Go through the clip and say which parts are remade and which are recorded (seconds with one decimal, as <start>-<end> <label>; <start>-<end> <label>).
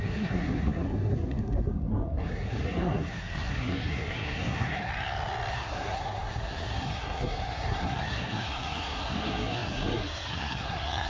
0.0-4.9 remade; 4.9-5.5 recorded; 5.5-11.1 remade